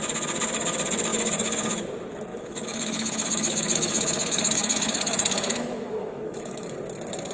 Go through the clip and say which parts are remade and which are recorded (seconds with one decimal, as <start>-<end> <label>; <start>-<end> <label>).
0.0-1.1 recorded; 1.1-1.8 remade; 1.8-2.3 recorded; 2.3-6.7 remade; 6.7-7.3 recorded